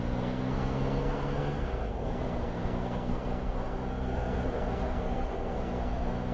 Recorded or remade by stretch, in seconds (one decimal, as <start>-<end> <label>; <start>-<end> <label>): 0.0-6.3 remade